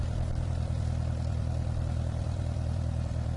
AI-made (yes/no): yes